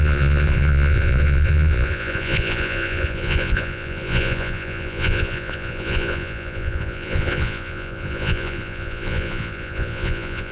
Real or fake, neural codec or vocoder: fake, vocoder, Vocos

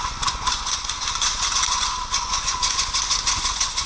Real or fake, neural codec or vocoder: fake, vocoder, Vocos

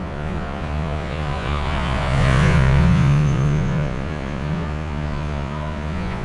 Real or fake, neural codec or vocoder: fake, vocoder, Vocos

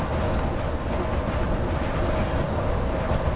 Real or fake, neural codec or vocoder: real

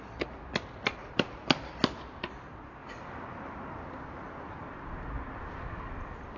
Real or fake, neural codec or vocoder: real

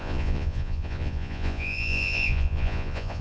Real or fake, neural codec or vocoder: fake, vocoder, Vocos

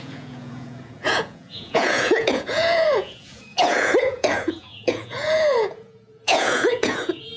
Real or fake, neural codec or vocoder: fake, vocoder, Vocos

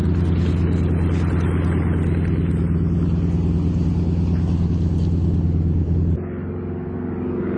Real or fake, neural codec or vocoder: real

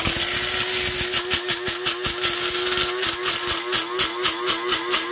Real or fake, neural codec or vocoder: real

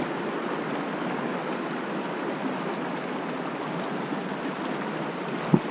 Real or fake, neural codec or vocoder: real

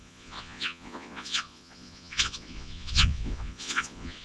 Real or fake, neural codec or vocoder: fake, vocoder, Vocos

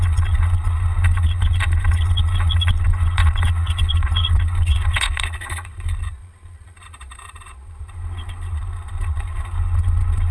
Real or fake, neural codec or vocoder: fake, vocoder, Vocos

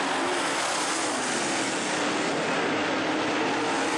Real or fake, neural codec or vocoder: real